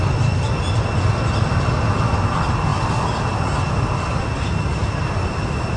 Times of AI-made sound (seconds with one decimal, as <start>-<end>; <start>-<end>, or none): none